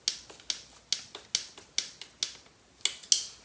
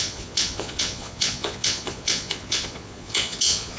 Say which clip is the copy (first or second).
second